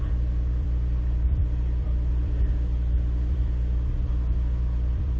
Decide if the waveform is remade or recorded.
remade